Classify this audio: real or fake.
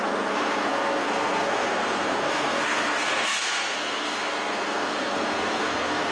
fake